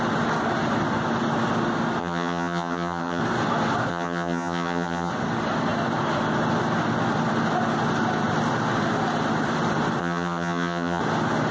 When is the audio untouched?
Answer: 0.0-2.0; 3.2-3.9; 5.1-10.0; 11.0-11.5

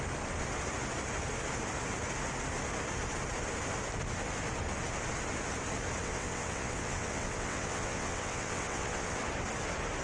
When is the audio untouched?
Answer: 0.0-6.0; 9.2-10.0

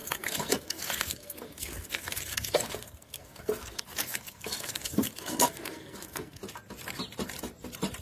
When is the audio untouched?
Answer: 6.4-8.0

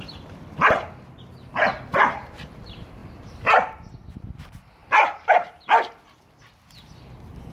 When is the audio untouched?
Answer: 0.0-1.9; 2.6-3.0; 3.8-4.8; 5.6-7.5